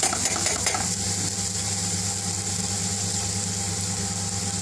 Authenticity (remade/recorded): recorded